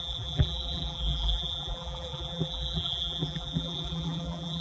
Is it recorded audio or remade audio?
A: remade